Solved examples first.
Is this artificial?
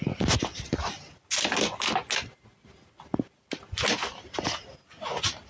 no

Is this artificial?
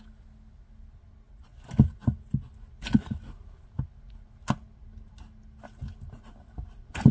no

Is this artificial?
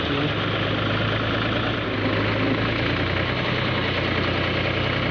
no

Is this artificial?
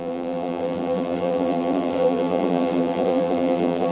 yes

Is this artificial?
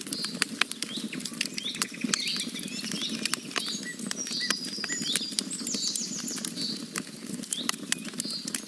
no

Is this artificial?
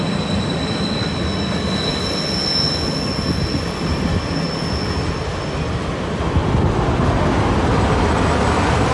no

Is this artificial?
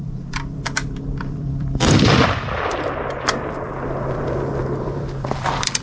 yes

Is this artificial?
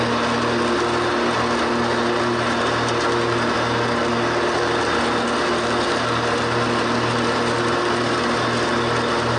no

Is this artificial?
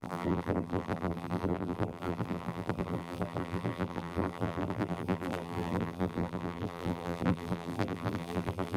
yes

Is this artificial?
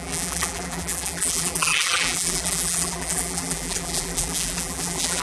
yes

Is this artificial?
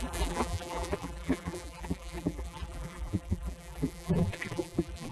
yes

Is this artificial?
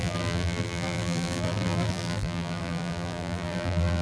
yes